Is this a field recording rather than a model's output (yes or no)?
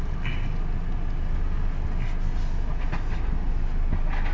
yes